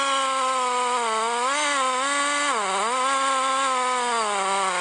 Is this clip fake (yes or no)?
no